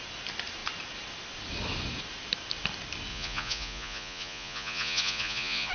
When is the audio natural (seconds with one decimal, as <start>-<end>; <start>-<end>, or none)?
0.0-3.1